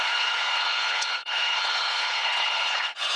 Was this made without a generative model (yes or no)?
no